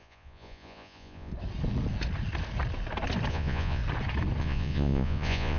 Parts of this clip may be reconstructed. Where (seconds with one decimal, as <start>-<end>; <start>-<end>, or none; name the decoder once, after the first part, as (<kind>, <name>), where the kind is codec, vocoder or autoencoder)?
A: 0.0-1.3 (vocoder, Vocos); 3.3-3.8; 4.4-5.6